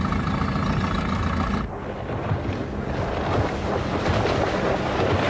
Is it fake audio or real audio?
real